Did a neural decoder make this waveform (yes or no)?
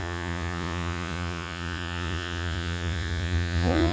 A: yes